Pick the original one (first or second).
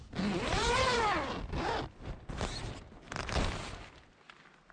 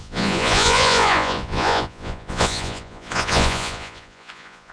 first